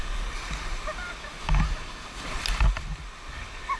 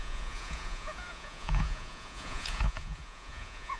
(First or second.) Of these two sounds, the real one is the first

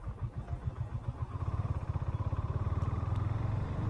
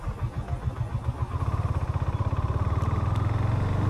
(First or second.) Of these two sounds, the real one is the second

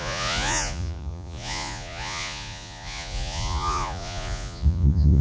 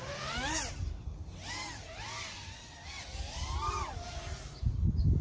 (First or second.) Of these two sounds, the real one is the second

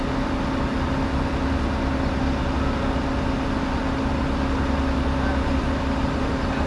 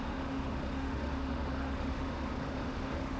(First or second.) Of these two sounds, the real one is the first